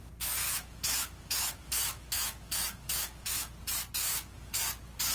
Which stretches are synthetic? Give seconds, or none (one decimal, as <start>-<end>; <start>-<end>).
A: 0.4-3.5; 4.0-4.6